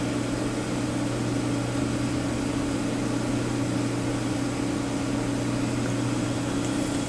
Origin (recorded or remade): recorded